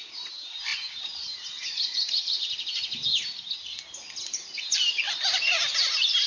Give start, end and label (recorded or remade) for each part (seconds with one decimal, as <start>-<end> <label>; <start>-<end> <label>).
0.0-6.3 recorded